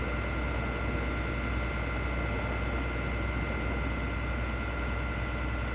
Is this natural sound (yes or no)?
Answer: yes